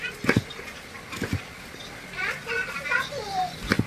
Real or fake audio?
real